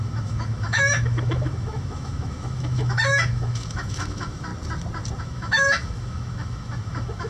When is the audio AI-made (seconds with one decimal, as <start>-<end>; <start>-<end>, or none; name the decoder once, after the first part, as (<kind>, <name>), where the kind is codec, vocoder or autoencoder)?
0.0-4.5 (autoencoder, DAC-VAE); 5.2-7.3